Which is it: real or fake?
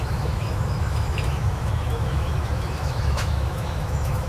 fake